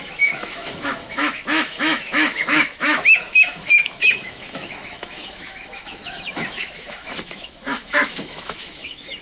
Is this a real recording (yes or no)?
no